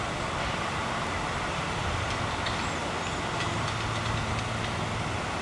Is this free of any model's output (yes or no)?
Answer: yes